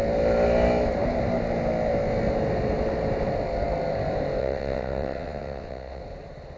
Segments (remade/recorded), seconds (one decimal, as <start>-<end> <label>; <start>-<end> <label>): 0.0-4.4 recorded; 4.4-6.0 remade; 6.0-6.6 recorded